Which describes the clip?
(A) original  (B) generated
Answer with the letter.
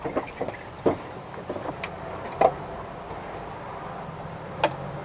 A